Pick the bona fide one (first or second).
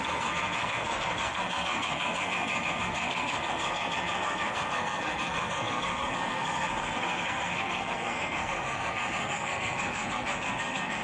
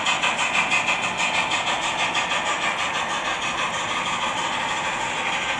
second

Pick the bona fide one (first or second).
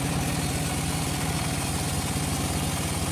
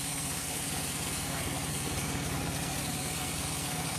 first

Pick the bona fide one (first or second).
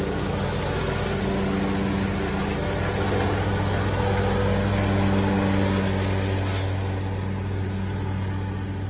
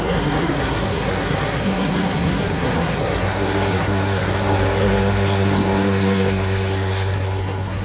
first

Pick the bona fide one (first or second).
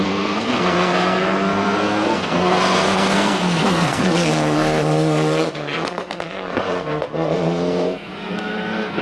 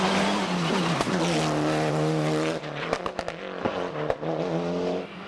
second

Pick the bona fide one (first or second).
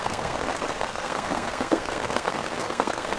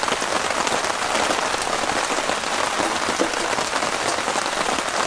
second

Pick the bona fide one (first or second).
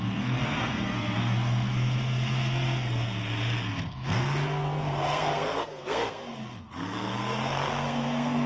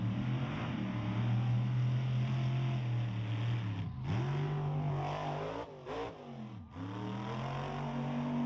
second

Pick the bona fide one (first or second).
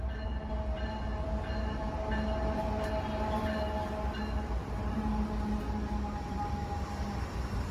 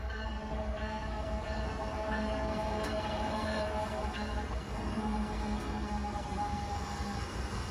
first